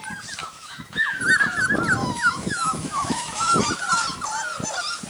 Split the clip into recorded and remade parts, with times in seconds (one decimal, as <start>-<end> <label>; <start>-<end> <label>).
0.0-0.4 recorded; 0.4-1.2 remade; 1.2-2.0 recorded; 2.0-3.6 remade; 3.6-5.1 recorded